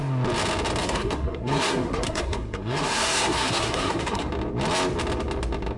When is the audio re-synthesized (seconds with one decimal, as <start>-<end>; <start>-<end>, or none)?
0.8-4.3